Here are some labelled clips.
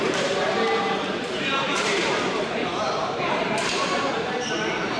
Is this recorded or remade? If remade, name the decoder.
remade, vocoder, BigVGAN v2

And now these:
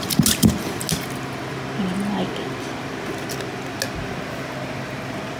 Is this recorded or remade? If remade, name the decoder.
recorded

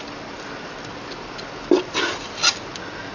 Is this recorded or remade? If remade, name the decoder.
recorded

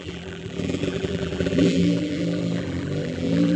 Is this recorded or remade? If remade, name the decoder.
remade, vocoder, BigVGAN v2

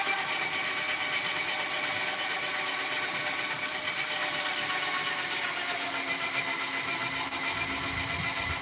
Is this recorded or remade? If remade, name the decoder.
recorded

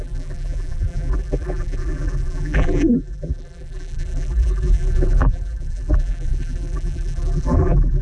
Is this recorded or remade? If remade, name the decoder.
remade, vocoder, BigVGAN v2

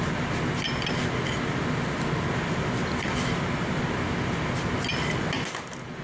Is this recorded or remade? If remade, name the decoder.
recorded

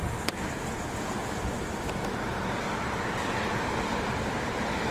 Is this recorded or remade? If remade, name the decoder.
remade, vocoder, BigVGAN v2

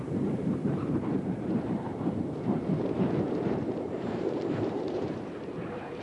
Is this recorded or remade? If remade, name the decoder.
remade, vocoder, BigVGAN v2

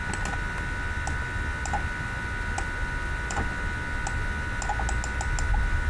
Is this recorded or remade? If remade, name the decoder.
recorded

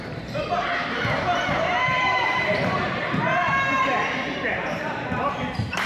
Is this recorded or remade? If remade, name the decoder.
remade, vocoder, BigVGAN v2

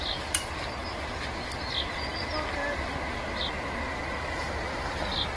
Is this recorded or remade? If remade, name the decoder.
recorded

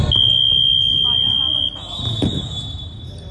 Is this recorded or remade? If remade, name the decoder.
recorded